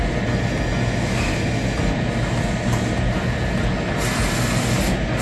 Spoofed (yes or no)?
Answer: no